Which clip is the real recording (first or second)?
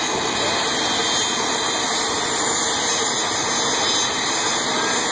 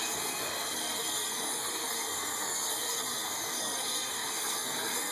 first